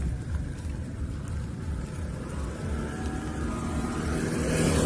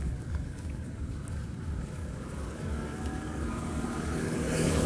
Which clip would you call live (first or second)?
first